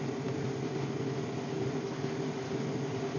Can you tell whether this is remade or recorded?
recorded